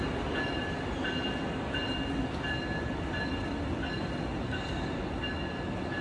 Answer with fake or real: real